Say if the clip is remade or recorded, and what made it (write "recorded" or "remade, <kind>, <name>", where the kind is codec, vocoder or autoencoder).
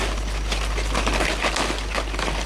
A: recorded